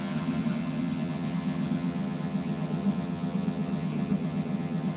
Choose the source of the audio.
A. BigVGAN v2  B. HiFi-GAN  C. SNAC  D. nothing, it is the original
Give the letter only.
B